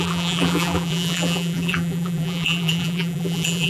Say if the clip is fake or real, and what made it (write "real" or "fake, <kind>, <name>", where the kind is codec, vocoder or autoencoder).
fake, vocoder, BigVGAN v2